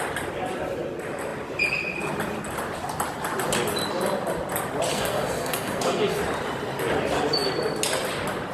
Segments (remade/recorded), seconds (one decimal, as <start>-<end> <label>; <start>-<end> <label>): 0.0-4.9 recorded; 4.9-6.2 remade; 6.2-8.5 recorded